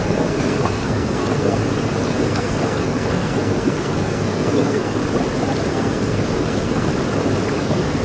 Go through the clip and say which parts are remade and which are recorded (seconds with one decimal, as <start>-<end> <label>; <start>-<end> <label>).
0.0-1.6 remade; 1.6-2.2 recorded; 2.2-5.0 remade; 5.0-5.7 recorded; 5.7-6.9 remade; 6.9-7.6 recorded; 7.6-8.0 remade